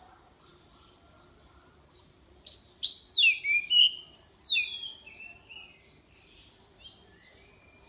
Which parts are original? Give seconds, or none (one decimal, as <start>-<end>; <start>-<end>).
0.0-7.9